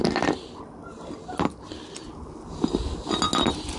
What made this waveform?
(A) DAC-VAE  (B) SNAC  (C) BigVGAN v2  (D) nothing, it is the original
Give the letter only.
D